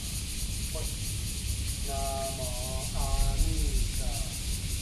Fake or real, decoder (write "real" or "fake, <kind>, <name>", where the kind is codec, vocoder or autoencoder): real